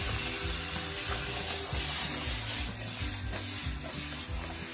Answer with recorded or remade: recorded